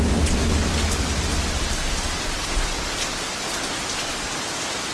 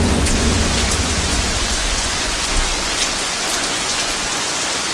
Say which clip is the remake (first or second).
second